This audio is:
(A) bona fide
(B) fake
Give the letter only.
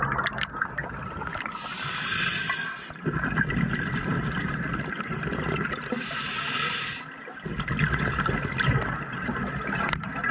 A